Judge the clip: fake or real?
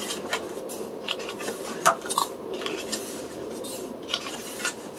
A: fake